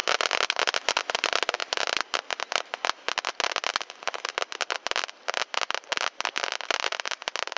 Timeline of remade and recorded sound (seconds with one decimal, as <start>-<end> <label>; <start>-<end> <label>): 0.0-7.6 recorded